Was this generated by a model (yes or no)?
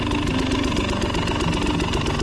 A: no